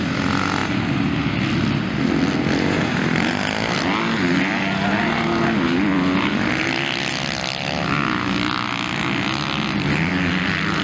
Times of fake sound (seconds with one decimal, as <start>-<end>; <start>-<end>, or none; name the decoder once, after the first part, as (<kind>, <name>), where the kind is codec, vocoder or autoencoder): none